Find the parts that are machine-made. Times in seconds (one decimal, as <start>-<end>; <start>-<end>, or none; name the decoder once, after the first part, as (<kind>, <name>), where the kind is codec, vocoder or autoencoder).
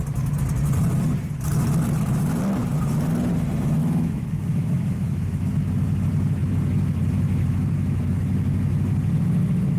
3.8-5.5 (autoencoder, DAC-VAE)